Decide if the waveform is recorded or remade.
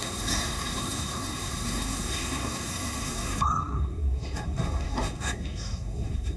remade